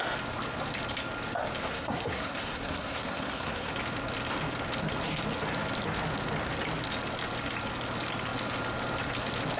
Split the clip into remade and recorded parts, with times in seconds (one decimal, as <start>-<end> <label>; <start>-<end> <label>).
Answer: 0.0-1.6 recorded; 1.6-3.7 remade; 3.7-9.6 recorded

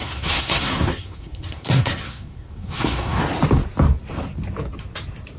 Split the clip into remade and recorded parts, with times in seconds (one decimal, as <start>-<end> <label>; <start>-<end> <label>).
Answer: 0.0-3.2 remade; 3.2-5.4 recorded

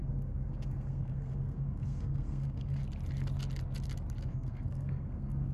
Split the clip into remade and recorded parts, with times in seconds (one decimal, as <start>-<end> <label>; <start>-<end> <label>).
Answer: 0.0-2.8 remade; 2.8-4.2 recorded; 4.2-5.5 remade

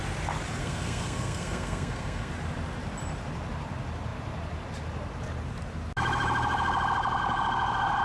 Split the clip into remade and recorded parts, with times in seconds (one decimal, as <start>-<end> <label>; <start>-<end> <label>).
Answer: 0.0-0.6 recorded; 0.6-2.3 remade; 2.3-8.0 recorded

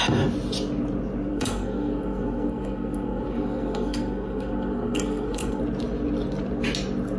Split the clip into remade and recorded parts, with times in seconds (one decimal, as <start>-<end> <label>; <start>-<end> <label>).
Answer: 0.0-1.3 recorded; 1.3-5.6 remade; 5.6-7.2 recorded

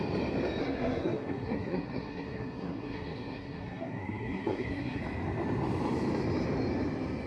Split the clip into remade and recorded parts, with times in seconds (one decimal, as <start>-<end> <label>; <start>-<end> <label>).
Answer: 0.0-0.6 recorded; 0.6-5.0 remade; 5.0-7.3 recorded

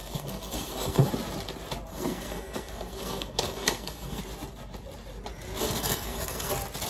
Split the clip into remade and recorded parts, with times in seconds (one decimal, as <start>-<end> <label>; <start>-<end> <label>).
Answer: 0.0-1.1 remade; 1.1-1.9 recorded; 1.9-4.2 remade; 4.2-5.6 recorded; 5.6-6.5 remade; 6.5-6.9 recorded